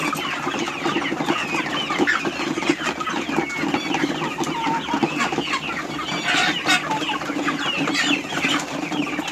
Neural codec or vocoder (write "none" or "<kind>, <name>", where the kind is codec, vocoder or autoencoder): none